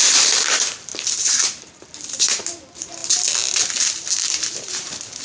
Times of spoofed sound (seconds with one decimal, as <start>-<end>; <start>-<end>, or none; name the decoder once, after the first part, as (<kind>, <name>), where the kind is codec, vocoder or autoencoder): 0.0-3.0 (vocoder, BigVGAN v2); 3.7-5.2